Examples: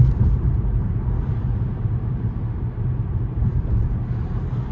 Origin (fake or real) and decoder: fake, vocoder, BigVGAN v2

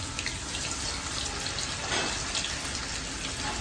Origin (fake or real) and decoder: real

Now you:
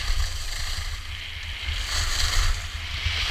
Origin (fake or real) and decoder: real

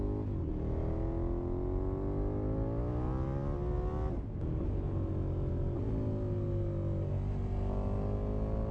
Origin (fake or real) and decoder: real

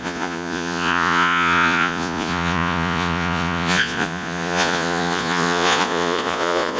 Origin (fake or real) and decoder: fake, vocoder, Vocos